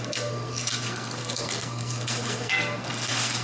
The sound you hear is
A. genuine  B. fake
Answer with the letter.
B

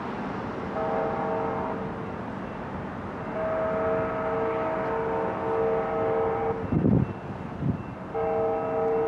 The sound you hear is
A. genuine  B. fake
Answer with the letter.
A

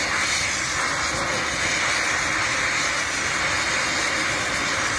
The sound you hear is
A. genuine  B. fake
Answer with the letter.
A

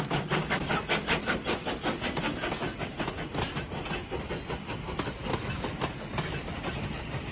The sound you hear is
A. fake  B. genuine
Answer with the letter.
B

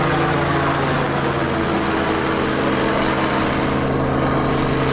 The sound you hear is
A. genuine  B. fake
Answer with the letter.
A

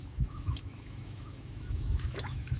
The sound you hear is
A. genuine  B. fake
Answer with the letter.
B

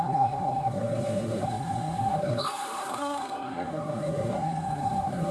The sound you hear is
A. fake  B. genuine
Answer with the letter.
A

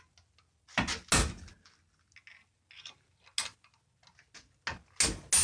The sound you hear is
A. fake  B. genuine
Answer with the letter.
B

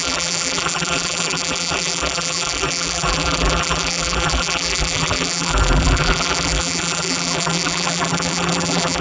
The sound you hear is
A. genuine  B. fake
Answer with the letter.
B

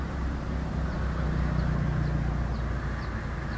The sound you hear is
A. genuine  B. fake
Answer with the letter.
A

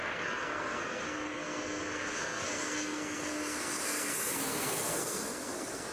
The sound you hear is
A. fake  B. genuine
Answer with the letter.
A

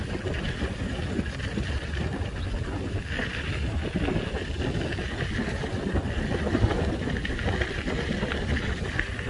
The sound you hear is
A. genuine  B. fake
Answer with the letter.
A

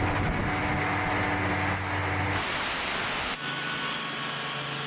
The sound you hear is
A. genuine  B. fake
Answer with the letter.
A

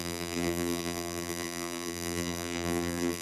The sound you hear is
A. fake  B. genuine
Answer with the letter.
A